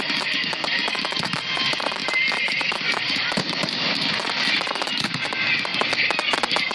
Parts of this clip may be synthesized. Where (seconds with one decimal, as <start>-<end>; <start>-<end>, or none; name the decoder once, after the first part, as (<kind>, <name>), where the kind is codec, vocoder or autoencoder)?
0.0-5.7 (vocoder, BigVGAN v2)